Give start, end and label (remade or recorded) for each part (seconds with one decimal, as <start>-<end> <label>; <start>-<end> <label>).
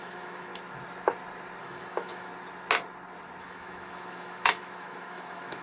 0.0-0.5 remade; 0.5-1.6 recorded; 1.6-2.3 remade; 2.3-3.4 recorded; 3.4-5.6 remade